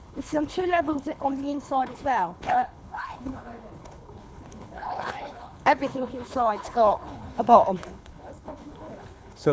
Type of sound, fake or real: fake